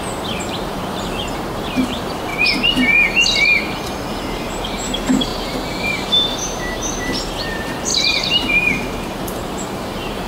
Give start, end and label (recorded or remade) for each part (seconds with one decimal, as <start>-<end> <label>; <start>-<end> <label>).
0.0-2.3 remade; 2.3-4.1 recorded; 4.1-5.3 remade; 5.3-5.8 recorded; 5.8-10.3 remade